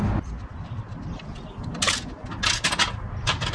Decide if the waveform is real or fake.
real